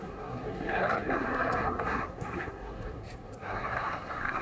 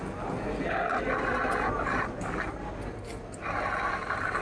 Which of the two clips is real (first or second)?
second